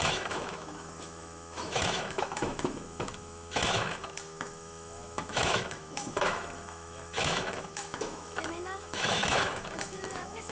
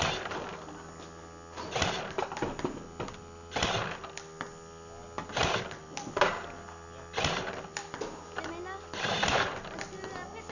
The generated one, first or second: first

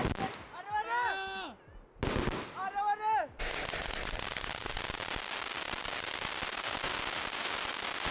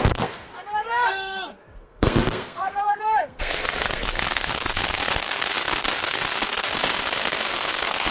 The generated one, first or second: second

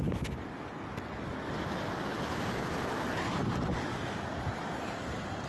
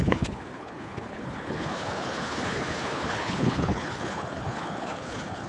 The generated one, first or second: second